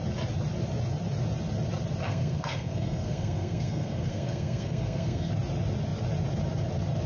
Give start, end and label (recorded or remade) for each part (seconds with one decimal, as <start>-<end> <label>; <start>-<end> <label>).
0.0-2.0 recorded; 2.0-5.3 remade; 5.3-7.1 recorded